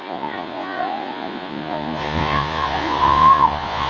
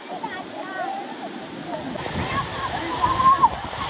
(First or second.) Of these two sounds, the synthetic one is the first